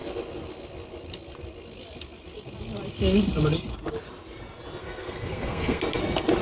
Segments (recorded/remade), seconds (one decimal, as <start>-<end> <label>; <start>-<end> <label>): 0.0-4.8 recorded; 4.8-5.8 remade; 5.8-6.4 recorded